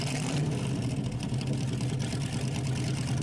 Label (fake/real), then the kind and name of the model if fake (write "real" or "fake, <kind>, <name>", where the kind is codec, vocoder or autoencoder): real